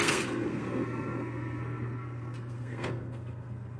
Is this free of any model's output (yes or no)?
no